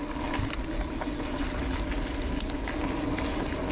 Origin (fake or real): real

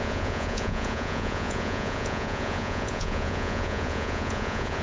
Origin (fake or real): fake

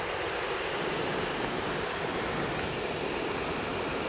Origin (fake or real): real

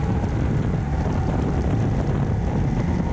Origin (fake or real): real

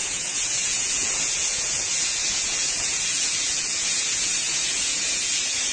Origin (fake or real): fake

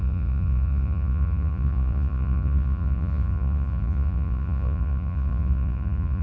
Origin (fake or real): fake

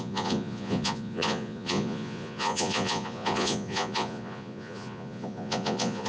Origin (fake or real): fake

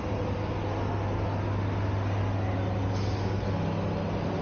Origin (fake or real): real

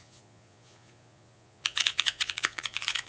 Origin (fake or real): fake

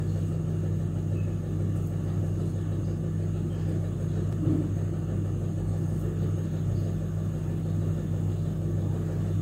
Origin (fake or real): real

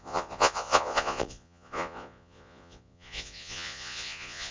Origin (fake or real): fake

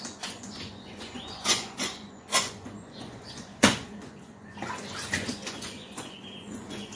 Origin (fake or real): fake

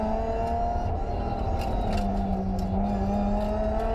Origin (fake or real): real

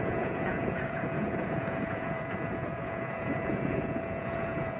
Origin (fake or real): fake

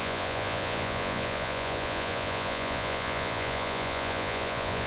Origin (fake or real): fake